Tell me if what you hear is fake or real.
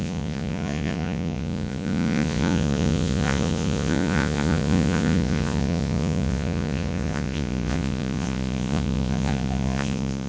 fake